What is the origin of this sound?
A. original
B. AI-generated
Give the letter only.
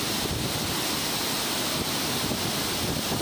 A